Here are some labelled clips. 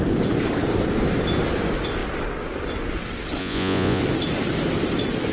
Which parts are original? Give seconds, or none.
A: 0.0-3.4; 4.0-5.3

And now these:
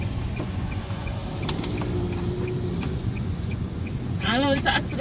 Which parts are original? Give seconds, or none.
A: 1.2-2.8

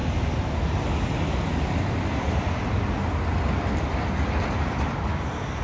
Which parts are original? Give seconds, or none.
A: 0.0-5.6